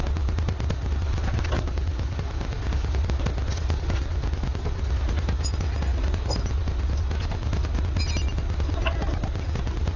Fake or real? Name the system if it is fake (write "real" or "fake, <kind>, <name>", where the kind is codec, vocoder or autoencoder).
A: real